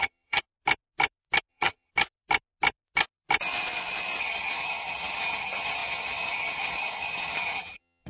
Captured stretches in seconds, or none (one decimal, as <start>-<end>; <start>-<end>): 0.4-1.5; 1.9-4.2